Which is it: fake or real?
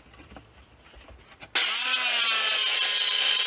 real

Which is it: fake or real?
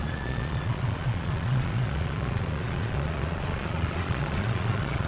fake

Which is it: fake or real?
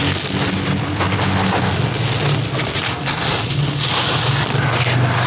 real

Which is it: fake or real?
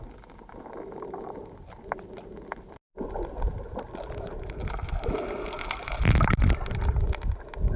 real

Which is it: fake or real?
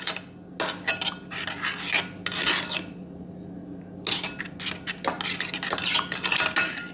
real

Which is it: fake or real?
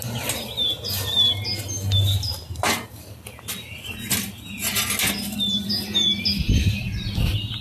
real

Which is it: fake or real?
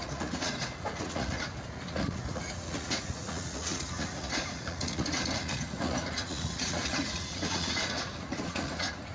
fake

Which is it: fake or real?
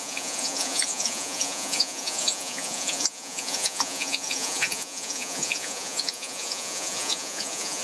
fake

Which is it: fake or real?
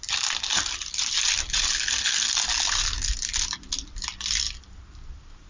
real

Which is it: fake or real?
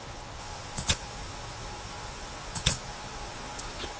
fake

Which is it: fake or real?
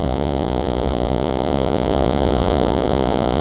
fake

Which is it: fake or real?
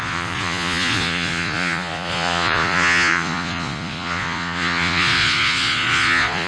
fake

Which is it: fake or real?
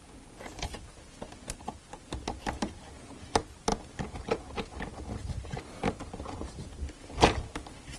real